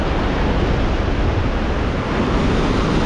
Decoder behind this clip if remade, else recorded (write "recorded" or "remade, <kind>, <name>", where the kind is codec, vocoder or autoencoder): recorded